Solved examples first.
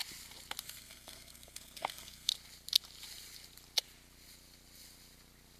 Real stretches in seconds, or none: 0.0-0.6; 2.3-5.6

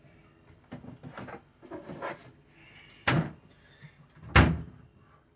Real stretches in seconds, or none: 0.0-5.4

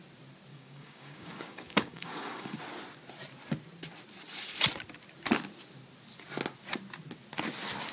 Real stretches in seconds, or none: 0.0-0.5; 2.6-7.9